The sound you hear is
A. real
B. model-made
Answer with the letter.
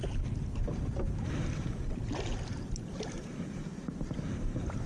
A